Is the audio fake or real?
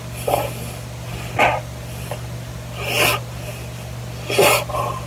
real